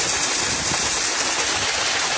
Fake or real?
real